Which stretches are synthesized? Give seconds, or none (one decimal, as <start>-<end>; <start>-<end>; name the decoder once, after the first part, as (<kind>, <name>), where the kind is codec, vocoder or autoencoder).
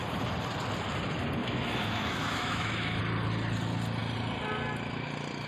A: 1.4-3.0 (autoencoder, DAC-VAE)